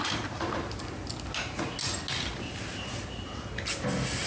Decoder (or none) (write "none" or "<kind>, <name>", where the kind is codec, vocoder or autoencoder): none